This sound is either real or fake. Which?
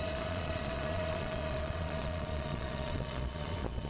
fake